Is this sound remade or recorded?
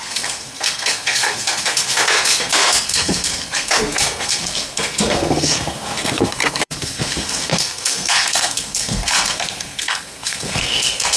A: remade